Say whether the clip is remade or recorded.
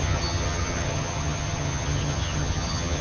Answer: remade